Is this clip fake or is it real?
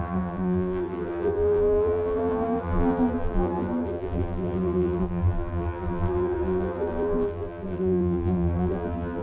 fake